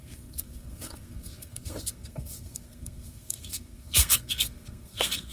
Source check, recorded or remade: remade